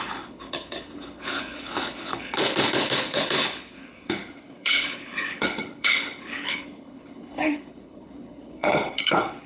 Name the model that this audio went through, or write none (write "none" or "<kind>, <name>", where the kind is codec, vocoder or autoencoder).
codec, HILCodec